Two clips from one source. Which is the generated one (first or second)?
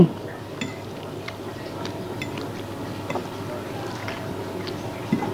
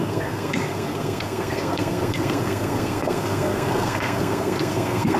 second